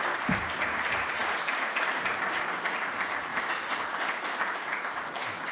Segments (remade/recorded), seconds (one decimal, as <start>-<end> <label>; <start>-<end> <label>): 0.0-3.3 recorded; 3.3-4.4 remade; 4.4-5.5 recorded